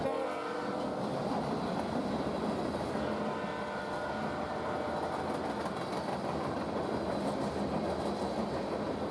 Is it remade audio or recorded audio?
recorded